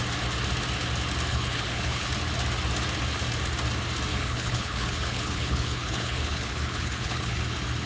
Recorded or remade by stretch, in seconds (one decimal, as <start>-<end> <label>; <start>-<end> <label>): 0.0-1.3 recorded; 1.3-2.1 remade; 2.1-4.1 recorded; 4.1-7.4 remade; 7.4-7.9 recorded

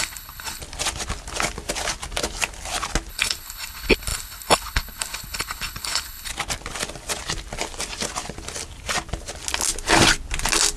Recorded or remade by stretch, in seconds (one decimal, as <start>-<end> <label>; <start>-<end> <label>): 0.0-0.6 remade; 0.6-3.1 recorded; 3.1-6.3 remade; 6.3-10.8 recorded

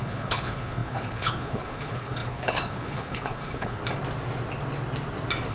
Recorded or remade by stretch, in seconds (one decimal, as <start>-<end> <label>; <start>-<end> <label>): 0.0-3.8 remade; 3.8-5.5 recorded

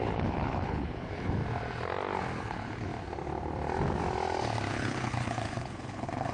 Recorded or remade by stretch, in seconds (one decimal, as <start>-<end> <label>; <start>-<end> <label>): 0.0-1.4 remade; 1.4-2.4 recorded; 2.4-2.9 remade; 2.9-4.7 recorded; 4.7-6.3 remade